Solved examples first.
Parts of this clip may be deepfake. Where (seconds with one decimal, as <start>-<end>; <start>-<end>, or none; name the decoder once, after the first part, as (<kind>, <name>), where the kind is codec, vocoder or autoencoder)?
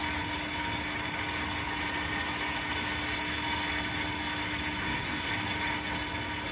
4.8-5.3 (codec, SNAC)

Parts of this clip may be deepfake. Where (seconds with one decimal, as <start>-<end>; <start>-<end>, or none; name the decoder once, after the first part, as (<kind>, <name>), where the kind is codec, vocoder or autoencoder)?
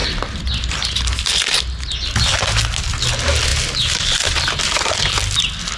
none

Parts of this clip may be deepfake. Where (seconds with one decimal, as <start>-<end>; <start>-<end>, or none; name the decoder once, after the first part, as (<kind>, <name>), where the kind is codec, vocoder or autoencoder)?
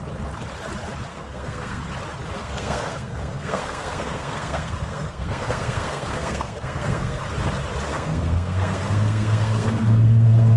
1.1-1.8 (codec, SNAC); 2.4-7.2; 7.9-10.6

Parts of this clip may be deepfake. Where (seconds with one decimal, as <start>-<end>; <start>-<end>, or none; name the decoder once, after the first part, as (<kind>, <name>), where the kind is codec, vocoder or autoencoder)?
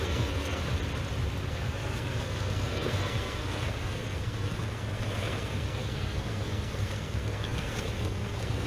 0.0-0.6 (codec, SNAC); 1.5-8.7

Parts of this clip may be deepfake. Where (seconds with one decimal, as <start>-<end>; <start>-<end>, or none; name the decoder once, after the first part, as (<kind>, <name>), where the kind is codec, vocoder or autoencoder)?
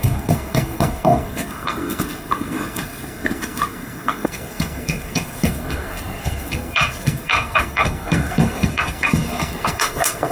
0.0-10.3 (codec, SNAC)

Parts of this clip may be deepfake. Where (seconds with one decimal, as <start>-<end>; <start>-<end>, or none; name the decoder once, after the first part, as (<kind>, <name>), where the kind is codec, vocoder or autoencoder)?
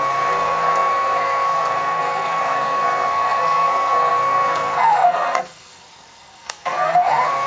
0.0-7.5 (codec, SNAC)